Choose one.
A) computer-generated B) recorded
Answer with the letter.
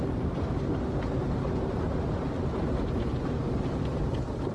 B